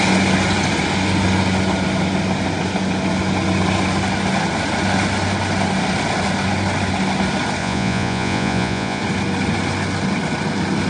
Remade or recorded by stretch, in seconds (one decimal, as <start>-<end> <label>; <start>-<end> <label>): 0.0-7.6 recorded; 7.6-9.0 remade; 9.0-10.9 recorded